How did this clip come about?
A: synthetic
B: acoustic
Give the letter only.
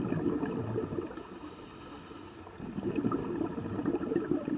A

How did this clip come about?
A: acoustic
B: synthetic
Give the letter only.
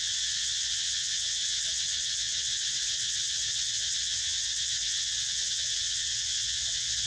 B